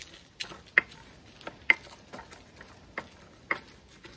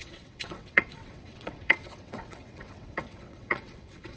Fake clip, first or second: second